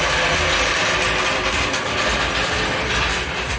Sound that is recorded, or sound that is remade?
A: recorded